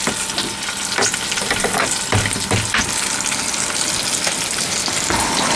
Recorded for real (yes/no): yes